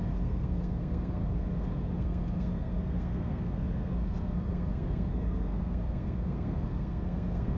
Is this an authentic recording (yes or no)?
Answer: no